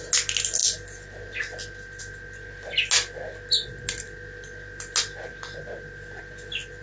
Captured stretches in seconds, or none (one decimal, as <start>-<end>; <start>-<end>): 0.0-6.8

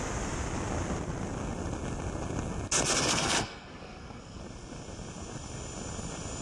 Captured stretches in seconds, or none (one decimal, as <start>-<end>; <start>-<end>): 0.0-3.1; 4.4-6.4